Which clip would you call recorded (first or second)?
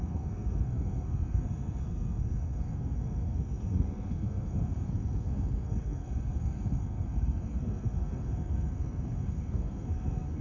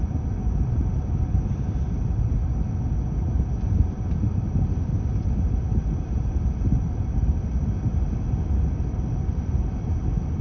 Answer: second